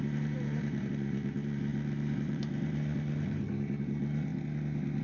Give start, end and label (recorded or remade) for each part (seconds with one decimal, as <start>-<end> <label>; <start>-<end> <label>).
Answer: 0.0-4.3 remade; 4.3-5.0 recorded